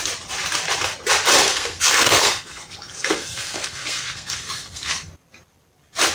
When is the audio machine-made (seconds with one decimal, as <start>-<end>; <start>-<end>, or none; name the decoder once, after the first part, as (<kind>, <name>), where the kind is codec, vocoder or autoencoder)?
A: 1.4-5.1 (codec, SNAC)